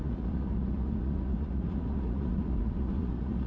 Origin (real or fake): fake